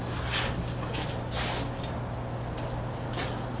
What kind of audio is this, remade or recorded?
recorded